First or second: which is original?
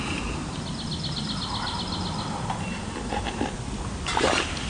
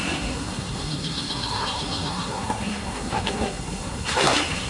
first